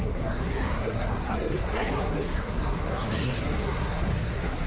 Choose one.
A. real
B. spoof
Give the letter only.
B